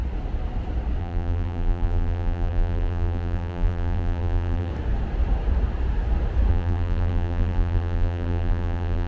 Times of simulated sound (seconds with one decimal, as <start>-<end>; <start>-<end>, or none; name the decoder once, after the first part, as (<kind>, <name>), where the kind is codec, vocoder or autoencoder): 1.0-4.7 (vocoder, BigVGAN v2); 6.5-9.1